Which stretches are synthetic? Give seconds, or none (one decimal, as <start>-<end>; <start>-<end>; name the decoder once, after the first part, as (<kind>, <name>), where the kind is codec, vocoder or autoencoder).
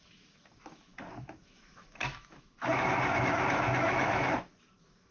0.0-5.1 (autoencoder, DAC-VAE)